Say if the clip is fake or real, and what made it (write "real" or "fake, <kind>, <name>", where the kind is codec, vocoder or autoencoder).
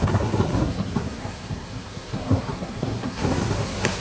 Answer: fake, codec, SNAC